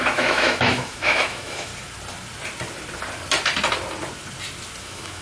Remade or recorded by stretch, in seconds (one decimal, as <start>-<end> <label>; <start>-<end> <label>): 0.0-1.7 remade; 1.7-4.8 recorded; 4.8-5.2 remade